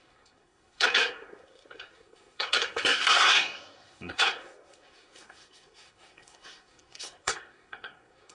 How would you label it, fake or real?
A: fake